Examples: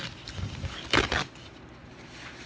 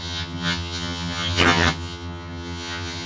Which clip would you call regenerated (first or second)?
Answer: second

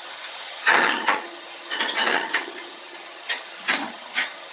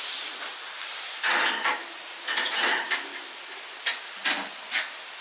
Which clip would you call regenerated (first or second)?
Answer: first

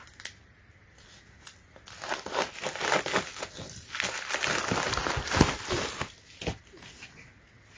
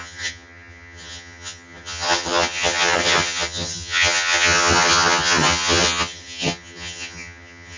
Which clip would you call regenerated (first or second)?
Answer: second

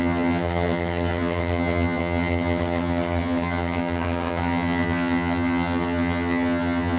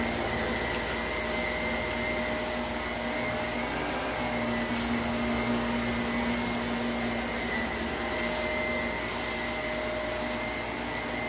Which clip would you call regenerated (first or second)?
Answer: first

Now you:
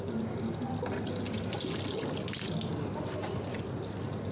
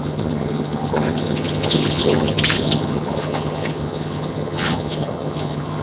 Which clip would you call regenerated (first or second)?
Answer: second